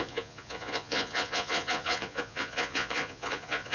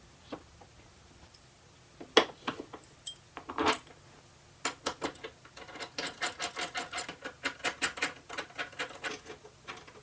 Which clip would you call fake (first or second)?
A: first